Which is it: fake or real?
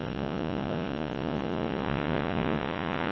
fake